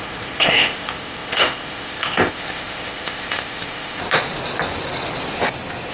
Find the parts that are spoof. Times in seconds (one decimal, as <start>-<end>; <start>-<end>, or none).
0.0-4.0